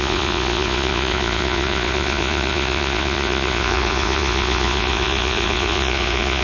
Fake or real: fake